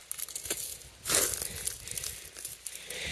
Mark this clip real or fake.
real